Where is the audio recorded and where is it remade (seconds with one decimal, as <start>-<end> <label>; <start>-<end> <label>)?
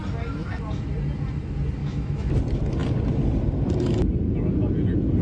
0.0-1.8 recorded; 1.8-2.3 remade; 2.3-5.2 recorded